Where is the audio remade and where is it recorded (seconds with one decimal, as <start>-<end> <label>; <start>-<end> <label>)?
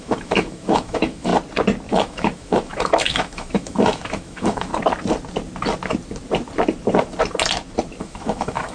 0.0-1.3 remade; 1.3-1.9 recorded; 1.9-4.7 remade; 4.7-8.0 recorded; 8.0-8.7 remade